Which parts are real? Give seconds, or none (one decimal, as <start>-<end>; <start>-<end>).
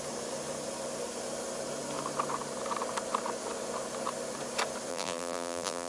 0.0-4.9